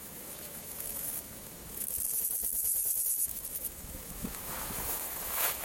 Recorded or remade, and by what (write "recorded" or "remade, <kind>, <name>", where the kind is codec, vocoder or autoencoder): remade, autoencoder, DAC-VAE